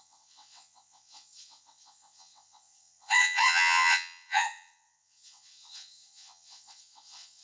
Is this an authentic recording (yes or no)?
no